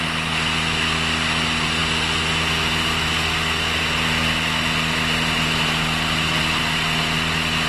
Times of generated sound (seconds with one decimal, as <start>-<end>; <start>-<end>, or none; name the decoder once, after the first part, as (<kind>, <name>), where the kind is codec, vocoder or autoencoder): none